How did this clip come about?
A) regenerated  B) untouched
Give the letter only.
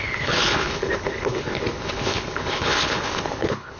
A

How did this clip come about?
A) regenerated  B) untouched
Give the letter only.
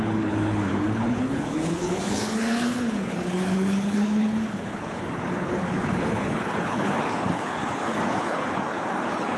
A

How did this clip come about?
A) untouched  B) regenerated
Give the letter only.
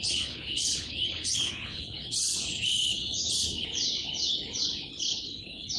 B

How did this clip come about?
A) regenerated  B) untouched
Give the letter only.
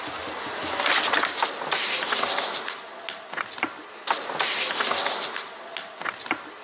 B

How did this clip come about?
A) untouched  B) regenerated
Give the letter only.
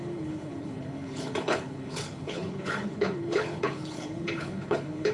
B